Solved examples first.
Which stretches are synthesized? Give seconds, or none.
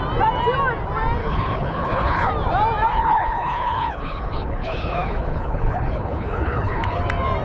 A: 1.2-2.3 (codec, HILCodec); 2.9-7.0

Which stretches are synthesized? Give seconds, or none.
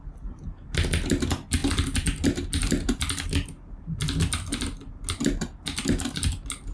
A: none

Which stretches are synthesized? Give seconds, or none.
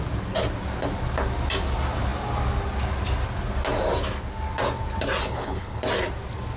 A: 5.2-5.8 (codec, HILCodec)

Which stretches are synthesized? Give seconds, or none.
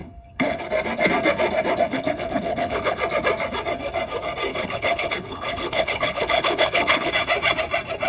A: 0.0-0.6 (codec, HILCodec); 1.9-3.0; 4.5-7.1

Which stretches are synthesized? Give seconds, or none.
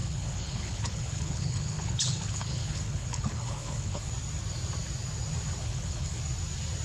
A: 0.0-4.1 (codec, HILCodec); 5.6-6.2